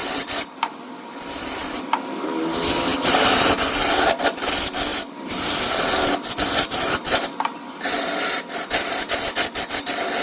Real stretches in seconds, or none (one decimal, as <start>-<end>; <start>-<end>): 1.3-2.9; 3.8-4.9; 7.9-10.2